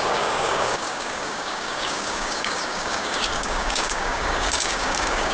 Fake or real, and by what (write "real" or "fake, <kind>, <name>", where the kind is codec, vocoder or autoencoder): fake, codec, DAC